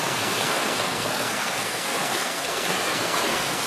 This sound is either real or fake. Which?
fake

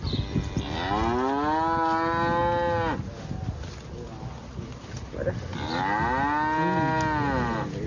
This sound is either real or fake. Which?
real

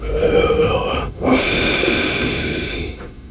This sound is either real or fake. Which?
fake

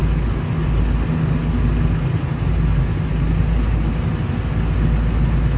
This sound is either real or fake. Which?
real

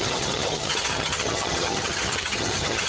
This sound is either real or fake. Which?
fake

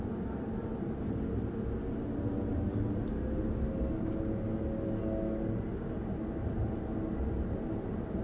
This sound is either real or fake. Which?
real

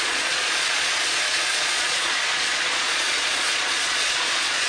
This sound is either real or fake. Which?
fake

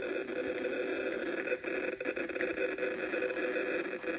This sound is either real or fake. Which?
real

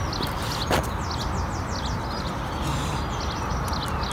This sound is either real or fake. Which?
real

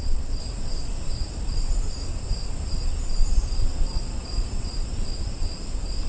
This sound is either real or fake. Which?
fake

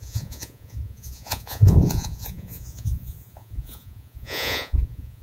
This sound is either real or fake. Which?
fake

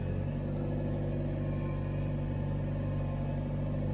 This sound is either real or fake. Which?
real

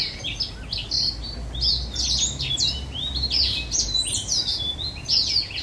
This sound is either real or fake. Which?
real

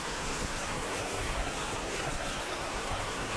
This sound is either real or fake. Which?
fake